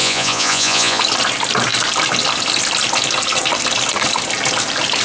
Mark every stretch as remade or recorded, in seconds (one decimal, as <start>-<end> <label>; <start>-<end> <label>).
0.0-1.0 remade; 1.0-5.0 recorded